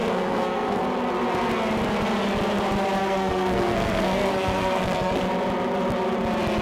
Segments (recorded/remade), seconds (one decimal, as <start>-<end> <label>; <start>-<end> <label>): 0.0-0.8 remade; 0.8-3.0 recorded; 3.0-5.2 remade; 5.2-6.6 recorded